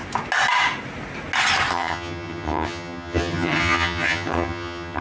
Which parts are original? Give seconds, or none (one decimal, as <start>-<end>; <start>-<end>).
0.0-1.7